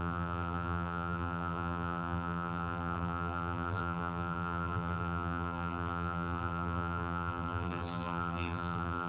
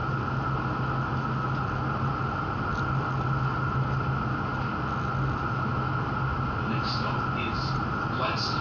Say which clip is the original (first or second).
second